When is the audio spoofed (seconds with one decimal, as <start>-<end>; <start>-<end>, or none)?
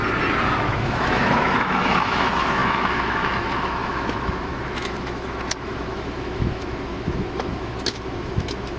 0.6-8.8